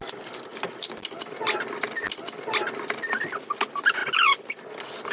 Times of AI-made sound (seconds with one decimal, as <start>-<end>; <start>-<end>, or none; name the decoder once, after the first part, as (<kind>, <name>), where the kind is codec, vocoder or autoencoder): none